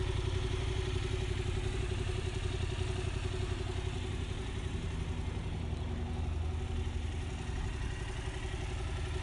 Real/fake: real